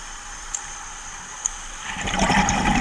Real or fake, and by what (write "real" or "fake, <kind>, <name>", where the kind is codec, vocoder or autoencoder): fake, vocoder, BigVGAN v2